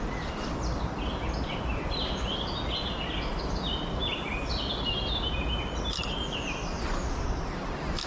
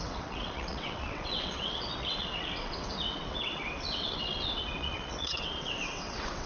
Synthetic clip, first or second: second